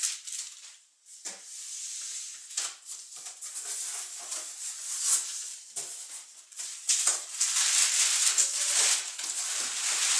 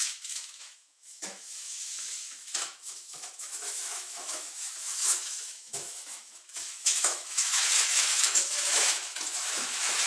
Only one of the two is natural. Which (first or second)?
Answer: first